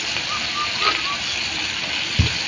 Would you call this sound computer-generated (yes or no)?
no